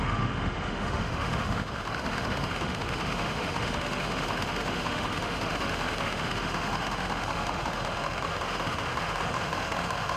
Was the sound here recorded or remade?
remade